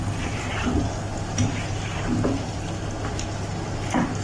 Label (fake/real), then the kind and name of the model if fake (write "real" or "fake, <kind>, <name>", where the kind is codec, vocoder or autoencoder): real